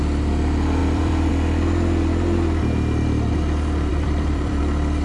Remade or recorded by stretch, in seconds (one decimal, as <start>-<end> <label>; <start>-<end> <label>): 0.0-0.8 recorded; 0.8-1.3 remade; 1.3-3.9 recorded; 3.9-4.6 remade; 4.6-5.0 recorded